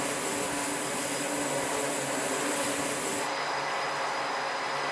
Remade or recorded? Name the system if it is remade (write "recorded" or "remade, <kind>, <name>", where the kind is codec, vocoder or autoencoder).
recorded